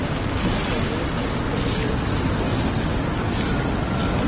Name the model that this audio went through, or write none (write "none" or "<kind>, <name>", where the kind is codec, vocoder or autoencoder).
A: none